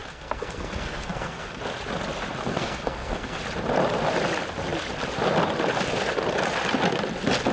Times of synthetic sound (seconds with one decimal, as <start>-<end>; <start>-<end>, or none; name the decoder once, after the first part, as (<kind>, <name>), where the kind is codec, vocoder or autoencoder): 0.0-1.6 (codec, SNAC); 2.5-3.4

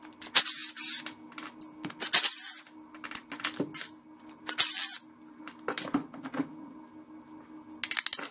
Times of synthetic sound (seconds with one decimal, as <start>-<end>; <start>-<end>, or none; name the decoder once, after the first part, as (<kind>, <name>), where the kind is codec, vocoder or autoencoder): none

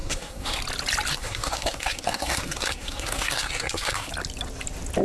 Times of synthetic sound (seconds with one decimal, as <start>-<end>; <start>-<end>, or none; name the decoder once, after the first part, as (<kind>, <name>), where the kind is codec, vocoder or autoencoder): 0.0-0.6 (codec, SNAC); 1.1-4.1